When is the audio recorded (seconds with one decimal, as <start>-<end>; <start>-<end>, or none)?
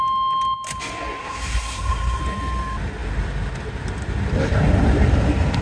0.0-1.2; 2.2-5.6